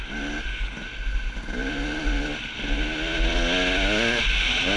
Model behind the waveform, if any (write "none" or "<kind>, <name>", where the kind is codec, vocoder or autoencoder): none